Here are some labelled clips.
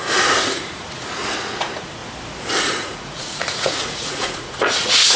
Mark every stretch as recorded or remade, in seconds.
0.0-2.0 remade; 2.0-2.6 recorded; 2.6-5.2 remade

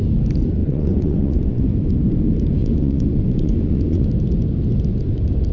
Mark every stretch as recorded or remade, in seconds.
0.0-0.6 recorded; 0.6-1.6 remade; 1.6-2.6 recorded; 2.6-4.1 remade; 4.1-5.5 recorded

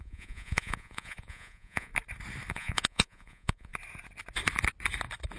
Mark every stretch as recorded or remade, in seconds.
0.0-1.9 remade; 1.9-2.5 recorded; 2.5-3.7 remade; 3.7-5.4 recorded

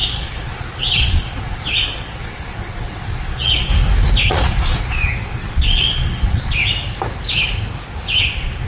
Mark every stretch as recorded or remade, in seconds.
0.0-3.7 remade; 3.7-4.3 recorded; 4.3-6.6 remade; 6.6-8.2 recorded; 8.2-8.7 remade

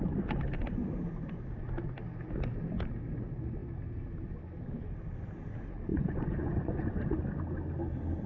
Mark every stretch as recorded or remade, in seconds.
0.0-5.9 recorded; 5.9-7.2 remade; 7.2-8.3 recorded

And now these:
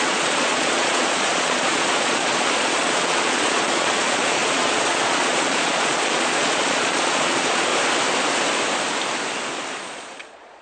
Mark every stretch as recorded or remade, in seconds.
0.0-7.7 remade; 7.7-9.8 recorded; 9.8-10.6 remade

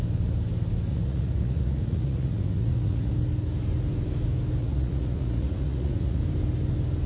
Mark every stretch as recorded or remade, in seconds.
0.0-0.9 recorded; 0.9-3.1 remade; 3.1-4.6 recorded; 4.6-6.2 remade; 6.2-7.1 recorded